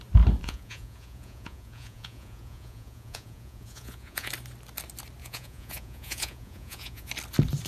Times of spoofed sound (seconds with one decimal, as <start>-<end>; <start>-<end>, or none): 0.4-4.3; 5.2-7.1